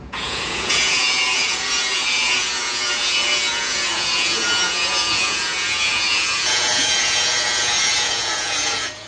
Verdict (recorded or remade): remade